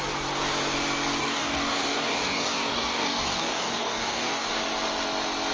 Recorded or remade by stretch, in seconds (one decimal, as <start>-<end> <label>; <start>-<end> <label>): 0.0-1.2 recorded; 1.2-4.5 remade; 4.5-5.5 recorded